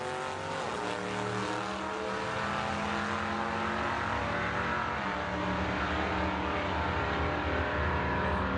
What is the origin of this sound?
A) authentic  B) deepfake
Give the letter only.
A